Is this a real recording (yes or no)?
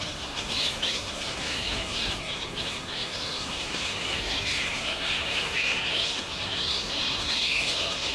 no